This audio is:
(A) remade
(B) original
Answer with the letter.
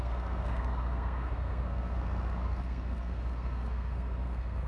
A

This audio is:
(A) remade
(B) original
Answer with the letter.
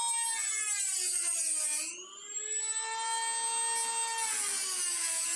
B